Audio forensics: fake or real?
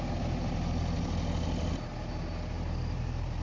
real